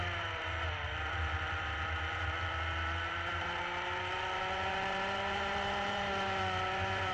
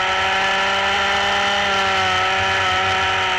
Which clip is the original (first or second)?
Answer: second